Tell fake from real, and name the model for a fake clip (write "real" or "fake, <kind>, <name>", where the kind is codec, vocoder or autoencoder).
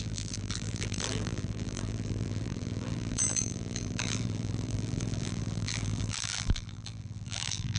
fake, vocoder, BigVGAN v2